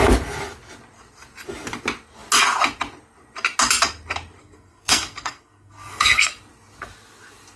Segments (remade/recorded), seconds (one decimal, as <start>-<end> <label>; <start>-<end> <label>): 0.0-4.4 recorded; 4.4-6.3 remade; 6.3-7.6 recorded